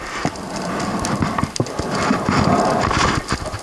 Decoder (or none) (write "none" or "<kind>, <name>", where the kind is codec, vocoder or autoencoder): none